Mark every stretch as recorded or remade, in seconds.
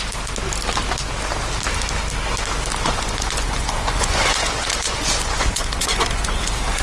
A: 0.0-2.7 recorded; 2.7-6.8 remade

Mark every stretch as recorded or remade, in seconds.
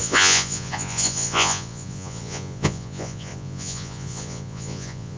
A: 0.0-5.2 remade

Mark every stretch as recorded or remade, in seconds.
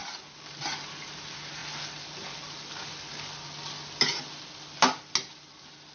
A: 0.0-5.9 recorded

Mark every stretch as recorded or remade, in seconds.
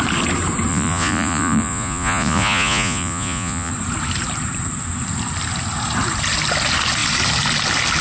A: 0.0-0.7 recorded; 0.7-3.7 remade; 3.7-8.0 recorded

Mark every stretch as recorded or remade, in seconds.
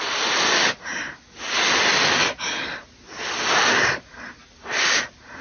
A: 0.0-5.4 recorded